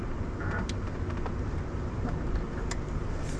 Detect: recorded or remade remade